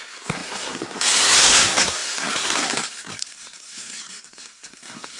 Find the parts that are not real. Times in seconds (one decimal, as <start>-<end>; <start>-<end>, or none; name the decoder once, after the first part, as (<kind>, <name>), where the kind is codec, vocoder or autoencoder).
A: 0.0-5.2 (codec, SNAC)